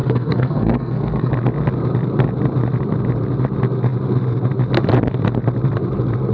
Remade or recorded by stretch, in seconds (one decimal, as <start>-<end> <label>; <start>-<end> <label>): 0.0-1.3 remade; 1.3-6.3 recorded